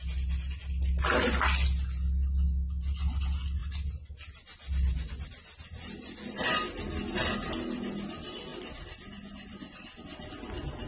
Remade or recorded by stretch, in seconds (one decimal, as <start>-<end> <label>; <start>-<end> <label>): 0.0-10.9 recorded